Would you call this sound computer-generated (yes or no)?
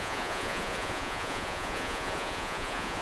yes